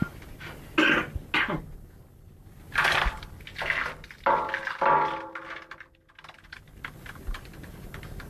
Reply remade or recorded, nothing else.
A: recorded